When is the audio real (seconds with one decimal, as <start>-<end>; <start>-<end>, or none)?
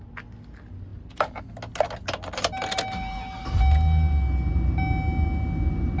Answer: 0.0-6.0